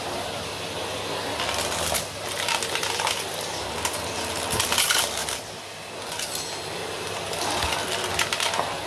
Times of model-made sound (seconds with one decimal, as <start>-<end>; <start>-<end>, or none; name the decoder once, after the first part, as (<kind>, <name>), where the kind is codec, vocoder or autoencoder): none